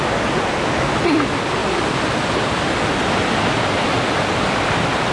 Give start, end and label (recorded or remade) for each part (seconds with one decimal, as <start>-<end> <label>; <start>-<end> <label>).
0.0-5.1 recorded